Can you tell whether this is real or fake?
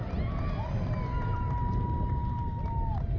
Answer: real